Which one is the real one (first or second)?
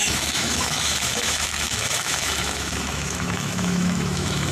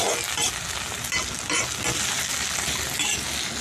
second